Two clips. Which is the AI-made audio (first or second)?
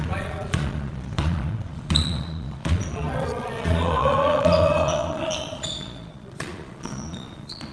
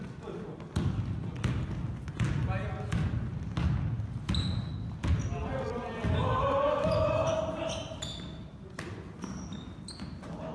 first